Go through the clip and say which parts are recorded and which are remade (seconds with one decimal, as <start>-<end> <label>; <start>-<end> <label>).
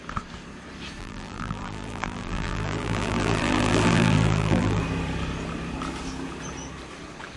0.0-1.0 recorded; 1.0-4.8 remade; 4.8-7.4 recorded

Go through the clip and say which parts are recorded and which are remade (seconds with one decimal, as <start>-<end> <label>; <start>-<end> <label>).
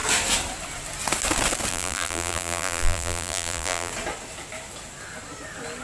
0.0-1.7 recorded; 1.7-3.9 remade; 3.9-5.8 recorded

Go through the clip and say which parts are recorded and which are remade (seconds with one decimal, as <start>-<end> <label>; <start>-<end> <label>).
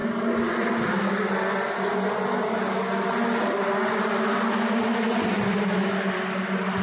0.0-6.8 recorded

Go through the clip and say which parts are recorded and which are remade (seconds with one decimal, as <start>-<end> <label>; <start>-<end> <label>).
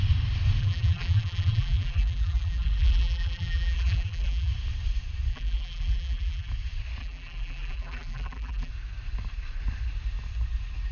0.0-0.6 recorded; 0.6-4.5 remade; 4.5-5.3 recorded; 5.3-6.5 remade; 6.5-7.0 recorded; 7.0-8.7 remade; 8.7-10.9 recorded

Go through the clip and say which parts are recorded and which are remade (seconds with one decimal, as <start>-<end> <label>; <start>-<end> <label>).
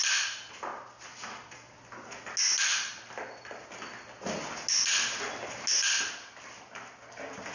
0.0-7.5 recorded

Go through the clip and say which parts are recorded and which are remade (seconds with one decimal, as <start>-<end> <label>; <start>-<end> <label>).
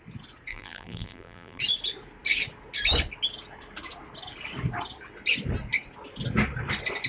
0.0-0.5 recorded; 0.5-1.6 remade; 1.6-7.1 recorded